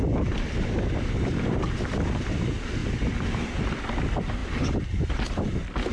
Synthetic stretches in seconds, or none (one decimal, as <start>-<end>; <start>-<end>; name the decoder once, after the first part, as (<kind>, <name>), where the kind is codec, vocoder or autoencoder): 0.0-2.8 (vocoder, BigVGAN v2); 3.6-4.4; 5.4-5.9